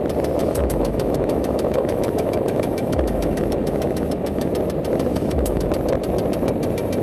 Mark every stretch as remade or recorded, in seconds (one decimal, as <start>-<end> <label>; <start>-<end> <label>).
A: 0.0-0.4 recorded; 0.4-4.5 remade; 4.5-5.1 recorded; 5.1-5.7 remade; 5.7-7.0 recorded